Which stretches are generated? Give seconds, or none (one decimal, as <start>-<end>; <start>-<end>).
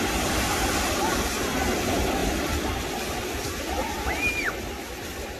2.2-4.1